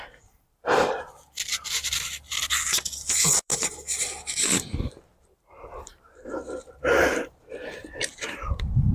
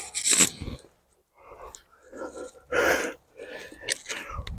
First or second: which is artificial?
first